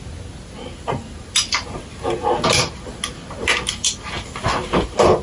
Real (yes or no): yes